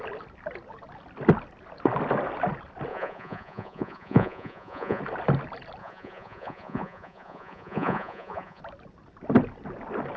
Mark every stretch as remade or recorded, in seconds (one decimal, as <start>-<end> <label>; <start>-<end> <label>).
0.0-2.9 recorded; 2.9-5.0 remade; 5.0-5.8 recorded; 5.8-8.6 remade; 8.6-10.2 recorded